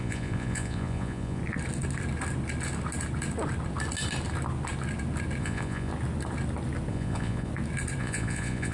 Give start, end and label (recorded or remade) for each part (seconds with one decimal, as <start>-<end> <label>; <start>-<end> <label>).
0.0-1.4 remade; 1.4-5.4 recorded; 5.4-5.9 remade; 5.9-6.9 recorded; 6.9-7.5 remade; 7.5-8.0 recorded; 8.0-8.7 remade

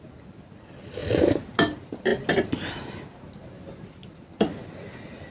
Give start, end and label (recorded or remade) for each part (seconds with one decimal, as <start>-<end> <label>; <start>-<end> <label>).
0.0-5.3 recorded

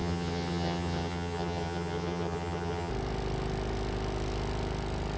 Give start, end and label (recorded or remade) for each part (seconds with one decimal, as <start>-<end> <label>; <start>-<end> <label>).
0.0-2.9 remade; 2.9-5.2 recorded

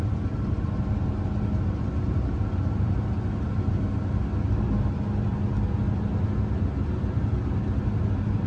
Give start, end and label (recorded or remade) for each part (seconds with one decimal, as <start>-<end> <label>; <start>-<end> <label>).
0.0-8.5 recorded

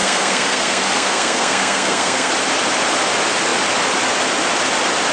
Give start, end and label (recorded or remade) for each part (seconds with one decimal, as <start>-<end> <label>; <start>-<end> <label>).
0.0-2.3 remade; 2.3-5.1 recorded

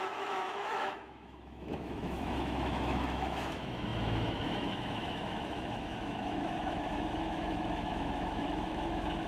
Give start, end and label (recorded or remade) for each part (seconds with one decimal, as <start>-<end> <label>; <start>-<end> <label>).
0.0-9.3 remade

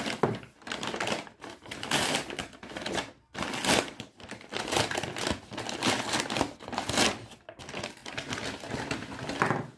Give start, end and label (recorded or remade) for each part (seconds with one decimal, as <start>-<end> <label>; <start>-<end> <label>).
0.0-9.8 recorded